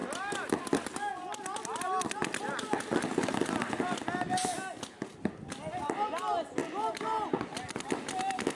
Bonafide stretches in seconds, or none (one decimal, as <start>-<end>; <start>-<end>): 0.0-8.6